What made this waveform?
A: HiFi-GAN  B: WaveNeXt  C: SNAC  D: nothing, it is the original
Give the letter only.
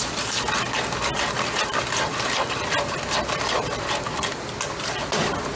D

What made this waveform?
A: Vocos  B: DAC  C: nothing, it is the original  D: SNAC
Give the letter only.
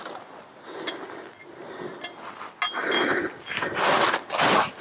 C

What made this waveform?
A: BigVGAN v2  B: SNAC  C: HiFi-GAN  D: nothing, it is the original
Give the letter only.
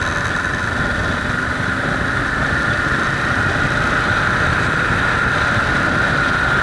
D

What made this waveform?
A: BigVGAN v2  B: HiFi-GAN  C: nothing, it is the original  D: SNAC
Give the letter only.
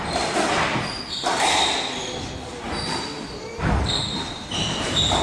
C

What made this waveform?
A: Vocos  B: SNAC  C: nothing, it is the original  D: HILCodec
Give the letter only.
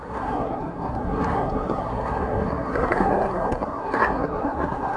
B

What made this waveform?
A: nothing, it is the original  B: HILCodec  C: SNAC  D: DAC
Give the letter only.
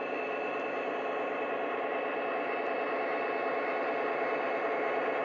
A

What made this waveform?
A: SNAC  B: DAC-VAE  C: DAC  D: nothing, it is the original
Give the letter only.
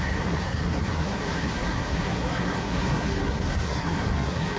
A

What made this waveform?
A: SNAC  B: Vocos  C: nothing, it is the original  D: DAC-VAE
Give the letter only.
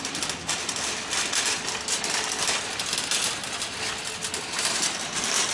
C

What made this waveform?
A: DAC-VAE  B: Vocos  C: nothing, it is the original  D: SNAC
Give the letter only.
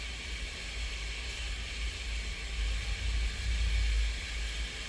C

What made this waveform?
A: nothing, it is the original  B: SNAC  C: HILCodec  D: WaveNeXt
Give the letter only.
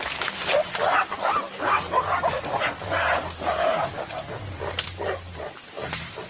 A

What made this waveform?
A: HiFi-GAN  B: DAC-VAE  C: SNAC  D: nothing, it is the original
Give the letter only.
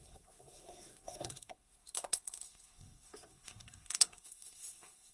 C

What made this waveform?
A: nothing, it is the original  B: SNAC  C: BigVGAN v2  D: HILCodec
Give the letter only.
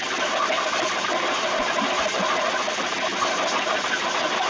A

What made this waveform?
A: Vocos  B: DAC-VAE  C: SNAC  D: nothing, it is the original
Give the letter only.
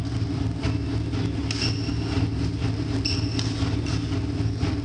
D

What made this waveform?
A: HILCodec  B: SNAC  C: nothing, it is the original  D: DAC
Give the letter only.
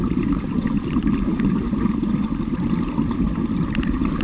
C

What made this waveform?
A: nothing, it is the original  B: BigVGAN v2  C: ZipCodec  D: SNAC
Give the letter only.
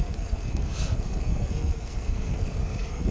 D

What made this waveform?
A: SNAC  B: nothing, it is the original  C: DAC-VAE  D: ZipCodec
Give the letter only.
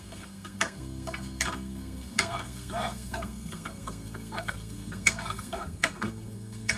A